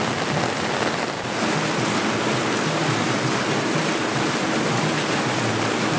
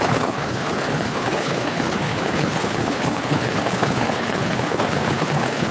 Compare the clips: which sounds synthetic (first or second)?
second